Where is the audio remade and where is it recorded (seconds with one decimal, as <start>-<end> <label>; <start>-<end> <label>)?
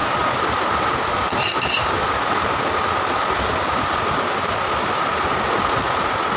0.0-6.4 recorded